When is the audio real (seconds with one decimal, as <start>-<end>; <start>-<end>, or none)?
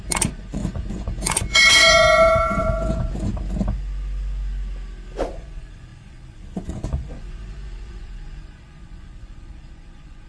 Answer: 3.3-5.3